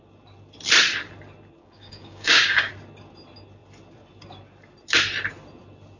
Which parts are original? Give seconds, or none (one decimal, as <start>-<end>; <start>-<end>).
0.0-1.6; 2.7-6.0